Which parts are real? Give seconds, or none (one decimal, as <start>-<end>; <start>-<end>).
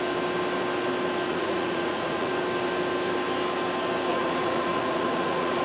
0.0-1.3; 2.3-4.1